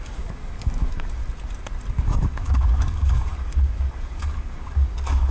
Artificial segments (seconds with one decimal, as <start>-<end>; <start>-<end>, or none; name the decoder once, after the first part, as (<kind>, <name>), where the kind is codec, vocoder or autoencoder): 0.0-1.2 (codec, DAC); 1.9-5.3